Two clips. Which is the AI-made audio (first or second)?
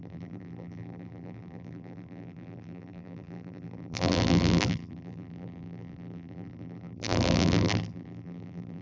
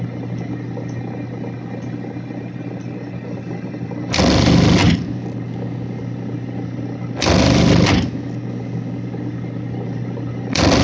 first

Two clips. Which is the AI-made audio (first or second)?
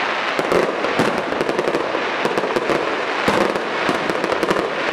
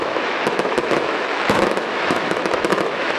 second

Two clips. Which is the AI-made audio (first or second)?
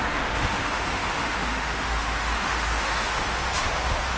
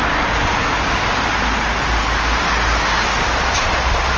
first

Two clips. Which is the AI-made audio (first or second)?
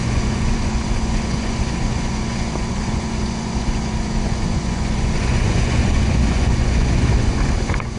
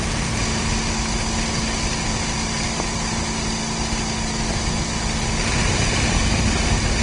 first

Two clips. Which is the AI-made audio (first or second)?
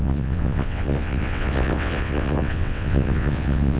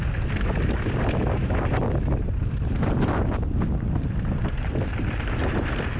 first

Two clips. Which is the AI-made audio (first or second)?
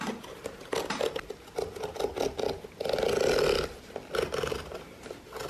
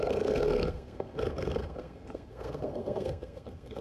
second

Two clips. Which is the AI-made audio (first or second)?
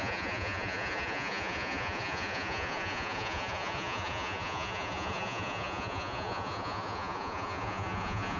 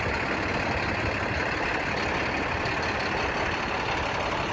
first